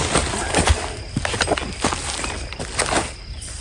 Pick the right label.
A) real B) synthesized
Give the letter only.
A